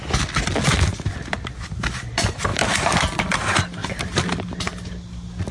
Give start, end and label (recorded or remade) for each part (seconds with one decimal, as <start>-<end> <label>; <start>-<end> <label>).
0.0-5.5 recorded

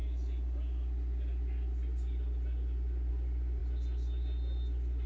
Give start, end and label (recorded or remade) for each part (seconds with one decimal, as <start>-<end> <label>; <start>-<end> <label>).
0.0-5.1 recorded